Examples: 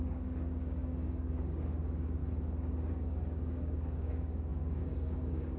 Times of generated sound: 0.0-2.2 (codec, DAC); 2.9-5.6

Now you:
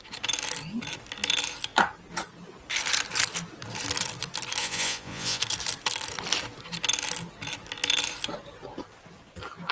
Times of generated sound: 4.6-5.4 (vocoder, Vocos)

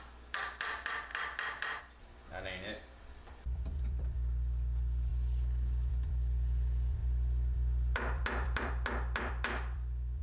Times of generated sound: 0.0-10.2 (vocoder, BigVGAN v2)

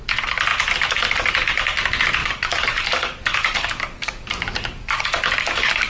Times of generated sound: 2.2-5.9 (codec, DAC)

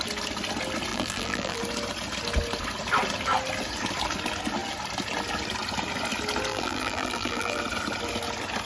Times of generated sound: 0.9-1.6 (vocoder, BigVGAN v2); 6.5-7.6

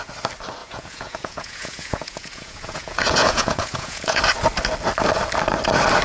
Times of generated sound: 0.6-4.2 (vocoder, Vocos)

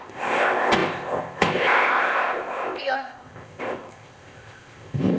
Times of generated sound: 0.0-5.2 (codec, ZipCodec)

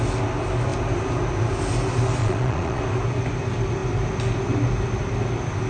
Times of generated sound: 2.2-2.8 (vocoder, Vocos)